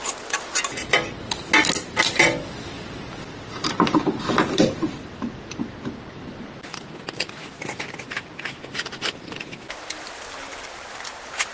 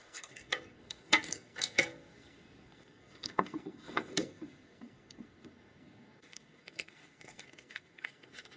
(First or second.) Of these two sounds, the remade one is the second